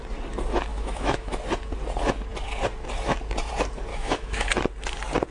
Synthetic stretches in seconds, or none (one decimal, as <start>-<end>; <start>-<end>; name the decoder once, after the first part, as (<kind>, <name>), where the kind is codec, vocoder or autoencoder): 0.7-1.3 (autoencoder, DAC-VAE); 3.9-4.5